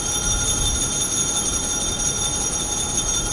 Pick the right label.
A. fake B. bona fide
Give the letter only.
B